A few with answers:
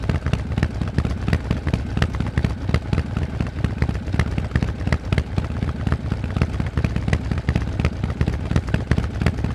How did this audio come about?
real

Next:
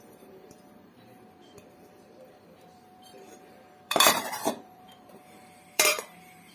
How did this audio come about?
fake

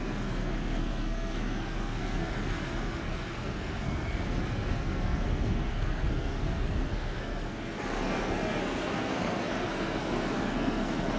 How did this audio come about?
fake